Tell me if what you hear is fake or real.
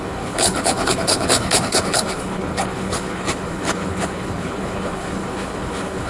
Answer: fake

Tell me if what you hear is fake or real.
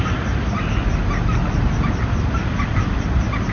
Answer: real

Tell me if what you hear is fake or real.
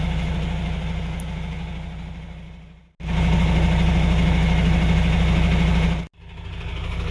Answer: real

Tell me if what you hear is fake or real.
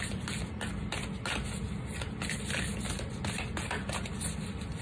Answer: real